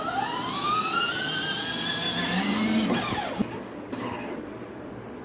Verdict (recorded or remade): recorded